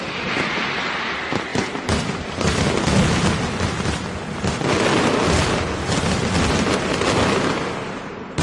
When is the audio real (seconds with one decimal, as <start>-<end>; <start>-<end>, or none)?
0.0-8.4